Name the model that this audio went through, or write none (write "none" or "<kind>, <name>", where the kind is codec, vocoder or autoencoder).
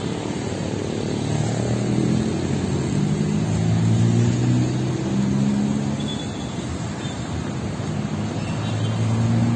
none